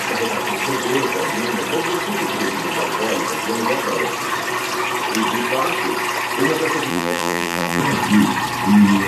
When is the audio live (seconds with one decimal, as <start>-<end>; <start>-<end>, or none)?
0.0-6.9; 7.8-9.1